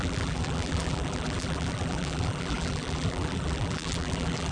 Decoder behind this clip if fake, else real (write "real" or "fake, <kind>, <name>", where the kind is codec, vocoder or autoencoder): fake, vocoder, BigVGAN v2